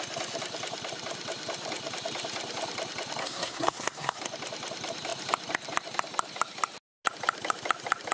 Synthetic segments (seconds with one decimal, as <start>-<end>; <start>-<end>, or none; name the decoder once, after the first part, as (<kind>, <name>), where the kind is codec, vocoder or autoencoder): 3.2-4.2 (codec, SNAC)